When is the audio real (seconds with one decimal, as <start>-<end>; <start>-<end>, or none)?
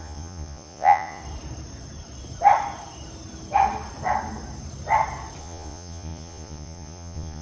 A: 1.2-5.4